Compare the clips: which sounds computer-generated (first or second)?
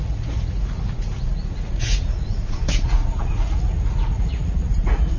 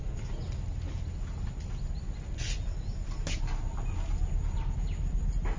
first